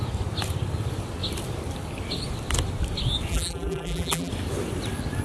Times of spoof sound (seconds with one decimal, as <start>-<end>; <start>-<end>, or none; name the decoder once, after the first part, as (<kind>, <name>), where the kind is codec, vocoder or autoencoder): 3.3-4.3 (vocoder, BigVGAN v2)